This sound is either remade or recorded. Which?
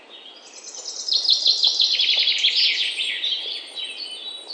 recorded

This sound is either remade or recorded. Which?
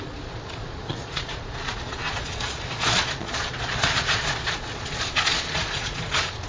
remade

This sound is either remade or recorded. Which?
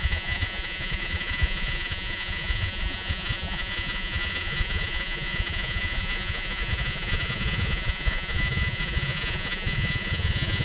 remade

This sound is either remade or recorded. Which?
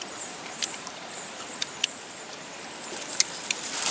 recorded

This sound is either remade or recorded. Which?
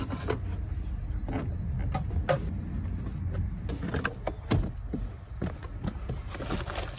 recorded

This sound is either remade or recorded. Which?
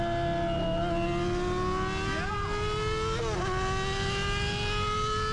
recorded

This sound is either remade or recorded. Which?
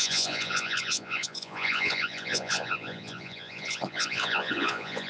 remade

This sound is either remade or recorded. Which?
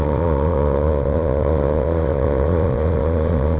remade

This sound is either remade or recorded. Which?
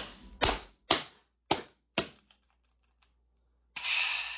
recorded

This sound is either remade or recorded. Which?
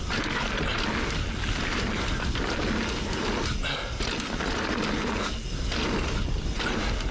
recorded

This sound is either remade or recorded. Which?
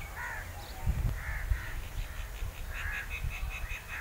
recorded